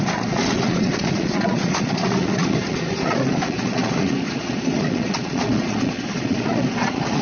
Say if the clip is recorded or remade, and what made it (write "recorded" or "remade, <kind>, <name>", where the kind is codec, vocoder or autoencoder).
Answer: remade, vocoder, Vocos